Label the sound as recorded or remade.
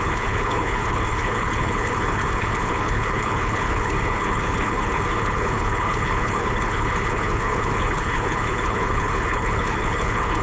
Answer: remade